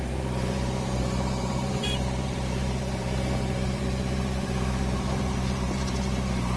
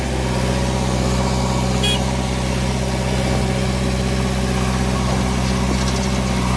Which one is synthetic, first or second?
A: first